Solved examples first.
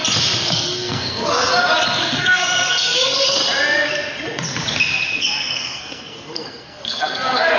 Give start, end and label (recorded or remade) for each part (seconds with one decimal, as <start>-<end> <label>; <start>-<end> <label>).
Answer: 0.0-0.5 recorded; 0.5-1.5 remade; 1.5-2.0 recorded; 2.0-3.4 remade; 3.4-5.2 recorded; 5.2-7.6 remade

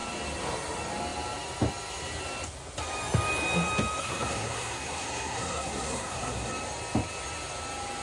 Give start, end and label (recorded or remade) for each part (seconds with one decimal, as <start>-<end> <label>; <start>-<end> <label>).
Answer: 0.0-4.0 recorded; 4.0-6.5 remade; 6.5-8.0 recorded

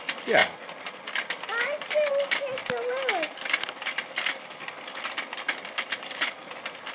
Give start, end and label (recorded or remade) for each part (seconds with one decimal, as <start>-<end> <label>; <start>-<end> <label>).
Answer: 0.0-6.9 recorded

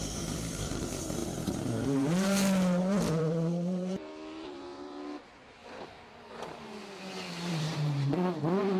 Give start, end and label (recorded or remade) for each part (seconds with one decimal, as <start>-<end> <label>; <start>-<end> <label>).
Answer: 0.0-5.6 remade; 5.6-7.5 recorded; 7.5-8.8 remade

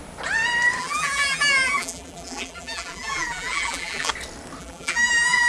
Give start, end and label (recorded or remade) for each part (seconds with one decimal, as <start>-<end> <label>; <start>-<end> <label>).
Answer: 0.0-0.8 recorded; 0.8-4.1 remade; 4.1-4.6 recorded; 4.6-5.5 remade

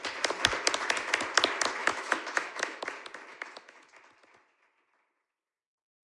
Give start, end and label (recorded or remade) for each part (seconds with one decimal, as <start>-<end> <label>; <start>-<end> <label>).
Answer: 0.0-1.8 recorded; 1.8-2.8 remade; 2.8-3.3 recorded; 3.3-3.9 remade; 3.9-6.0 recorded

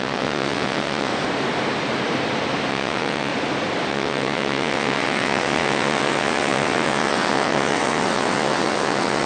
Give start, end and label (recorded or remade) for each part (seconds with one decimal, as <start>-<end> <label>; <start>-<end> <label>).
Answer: 0.0-1.1 remade; 1.1-2.7 recorded; 2.7-3.3 remade; 3.3-3.9 recorded; 3.9-9.3 remade

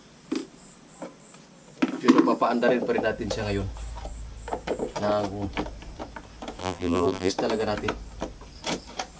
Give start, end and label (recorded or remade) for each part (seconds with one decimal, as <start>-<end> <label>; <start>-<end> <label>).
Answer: 0.0-6.6 recorded; 6.6-7.3 remade; 7.3-9.2 recorded